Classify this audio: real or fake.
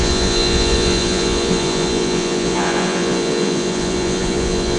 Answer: fake